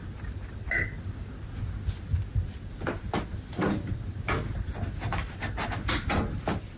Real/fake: real